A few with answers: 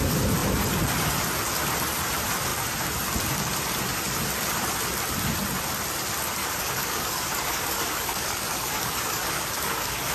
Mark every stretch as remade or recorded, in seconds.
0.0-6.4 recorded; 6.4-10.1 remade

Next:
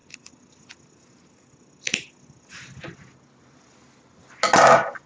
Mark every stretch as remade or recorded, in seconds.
0.0-5.1 recorded

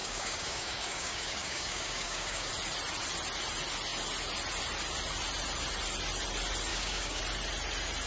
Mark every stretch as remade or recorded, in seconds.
0.0-2.5 remade; 2.5-6.7 recorded; 6.7-7.2 remade; 7.2-8.1 recorded

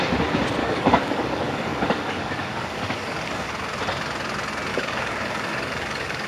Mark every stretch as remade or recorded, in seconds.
0.0-0.6 recorded; 0.6-3.5 remade; 3.5-4.7 recorded; 4.7-6.3 remade

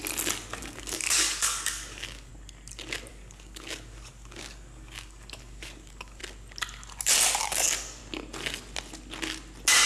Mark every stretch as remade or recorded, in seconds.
0.0-0.6 recorded; 0.6-2.3 remade; 2.3-3.1 recorded; 3.1-6.2 remade; 6.2-7.4 recorded; 7.4-8.0 remade; 8.0-9.9 recorded

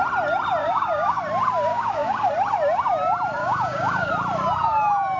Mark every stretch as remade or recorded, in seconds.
0.0-0.6 recorded; 0.6-1.2 remade; 1.2-1.7 recorded; 1.7-2.3 remade; 2.3-3.4 recorded; 3.4-4.1 remade; 4.1-5.2 recorded

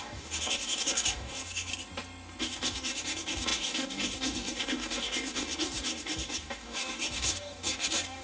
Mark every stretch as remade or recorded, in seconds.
0.0-1.7 remade; 1.7-2.4 recorded; 2.4-8.2 remade